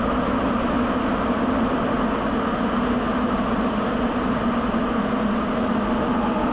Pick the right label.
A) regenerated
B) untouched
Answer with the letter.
B